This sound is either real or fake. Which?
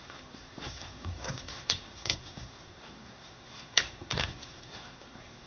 fake